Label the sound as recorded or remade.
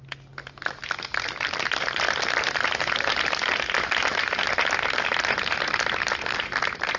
recorded